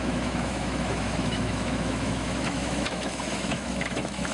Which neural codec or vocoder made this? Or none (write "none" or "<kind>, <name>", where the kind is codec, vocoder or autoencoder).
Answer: autoencoder, DAC-VAE